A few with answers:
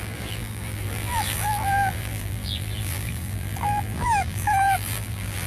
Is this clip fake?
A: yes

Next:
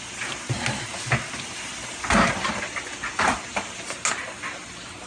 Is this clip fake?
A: no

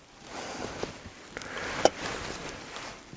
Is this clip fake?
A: no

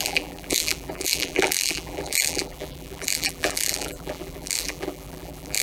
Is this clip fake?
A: yes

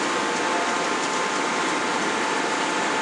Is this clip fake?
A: yes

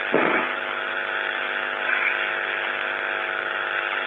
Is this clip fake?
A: no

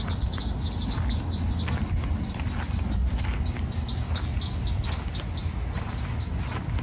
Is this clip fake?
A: no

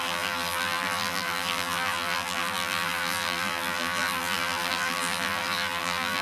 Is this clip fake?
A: yes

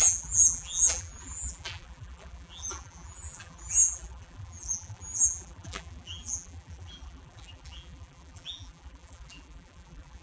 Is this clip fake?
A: yes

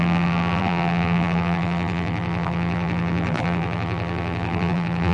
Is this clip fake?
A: yes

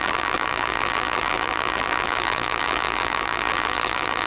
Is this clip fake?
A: yes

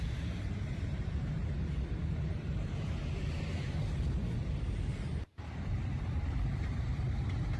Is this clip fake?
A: yes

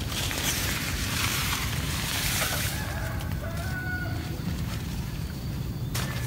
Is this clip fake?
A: yes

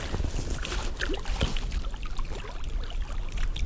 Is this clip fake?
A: no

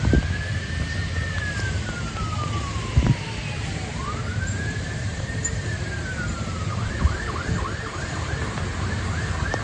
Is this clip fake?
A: yes